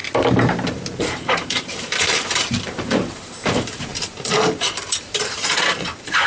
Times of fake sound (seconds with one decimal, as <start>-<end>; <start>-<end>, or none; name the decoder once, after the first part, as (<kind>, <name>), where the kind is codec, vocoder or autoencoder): 0.9-6.3 (vocoder, BigVGAN v2)